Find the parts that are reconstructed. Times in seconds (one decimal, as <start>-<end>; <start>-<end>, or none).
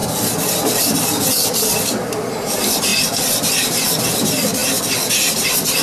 0.0-2.3; 4.6-5.8